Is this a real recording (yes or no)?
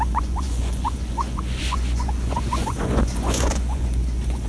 no